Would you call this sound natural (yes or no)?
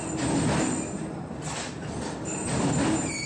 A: yes